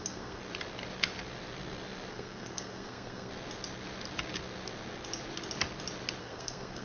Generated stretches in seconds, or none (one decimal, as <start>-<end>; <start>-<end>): 0.0-0.4; 2.1-3.3; 6.2-6.8